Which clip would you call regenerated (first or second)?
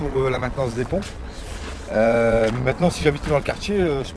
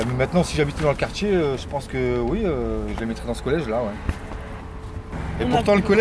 first